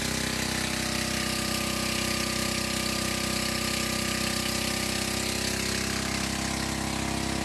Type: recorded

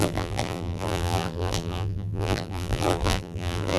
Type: remade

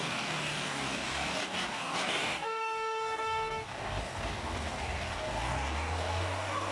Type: remade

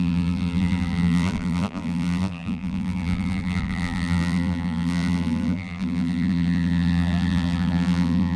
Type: remade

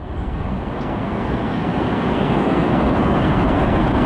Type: remade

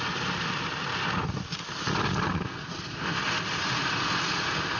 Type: recorded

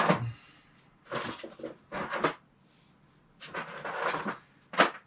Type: recorded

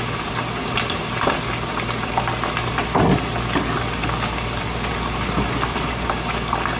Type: recorded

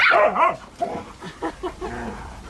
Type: recorded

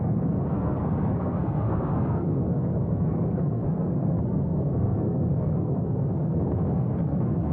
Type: remade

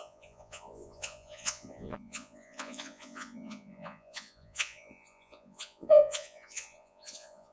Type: remade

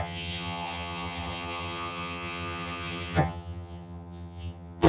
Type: remade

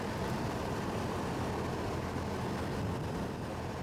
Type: recorded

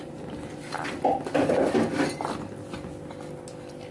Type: recorded